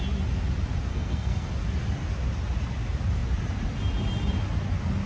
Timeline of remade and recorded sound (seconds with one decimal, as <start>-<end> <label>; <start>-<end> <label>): 0.0-0.9 recorded; 0.9-1.5 remade; 1.5-5.1 recorded